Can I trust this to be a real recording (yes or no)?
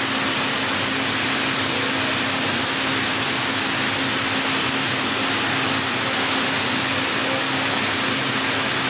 yes